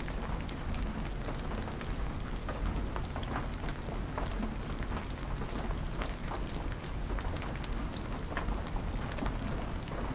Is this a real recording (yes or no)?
yes